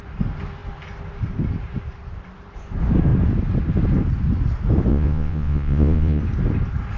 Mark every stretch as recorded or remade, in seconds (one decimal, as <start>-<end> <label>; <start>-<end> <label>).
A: 0.0-4.9 recorded; 4.9-6.2 remade; 6.2-7.0 recorded